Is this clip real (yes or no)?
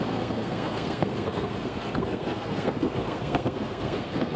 no